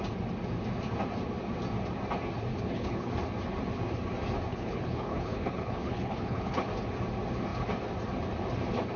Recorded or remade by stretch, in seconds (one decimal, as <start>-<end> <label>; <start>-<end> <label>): 0.0-2.5 recorded; 2.5-3.1 remade; 3.1-4.5 recorded; 4.5-6.7 remade; 6.7-9.0 recorded